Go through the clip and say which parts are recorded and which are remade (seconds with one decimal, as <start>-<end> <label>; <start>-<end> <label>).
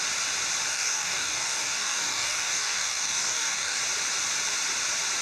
0.0-0.7 recorded; 0.7-3.8 remade; 3.8-5.2 recorded